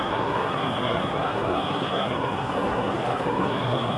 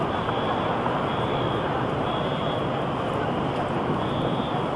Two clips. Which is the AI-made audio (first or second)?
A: first